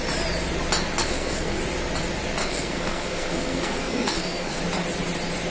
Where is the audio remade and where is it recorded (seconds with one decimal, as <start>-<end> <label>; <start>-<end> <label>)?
0.0-1.0 recorded; 1.0-1.6 remade; 1.6-2.4 recorded; 2.4-4.6 remade; 4.6-5.5 recorded